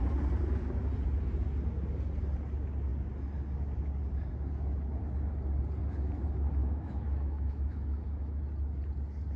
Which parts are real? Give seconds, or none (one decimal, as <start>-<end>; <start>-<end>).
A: 0.0-6.6; 8.4-9.4